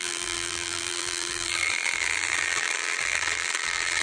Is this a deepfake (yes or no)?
yes